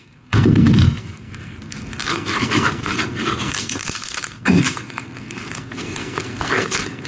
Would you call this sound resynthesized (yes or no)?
yes